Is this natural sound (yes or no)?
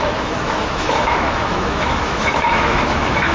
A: no